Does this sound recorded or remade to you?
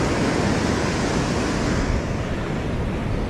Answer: recorded